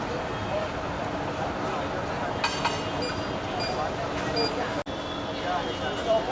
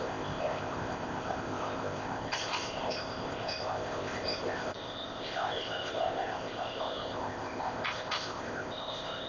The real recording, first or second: first